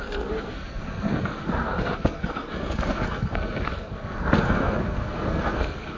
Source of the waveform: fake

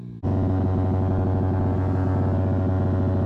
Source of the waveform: real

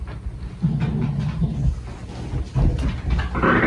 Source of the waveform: real